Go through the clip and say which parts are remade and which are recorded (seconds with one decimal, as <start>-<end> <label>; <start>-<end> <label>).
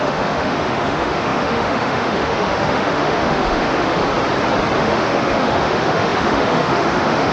0.0-4.0 remade; 4.0-4.8 recorded; 4.8-7.3 remade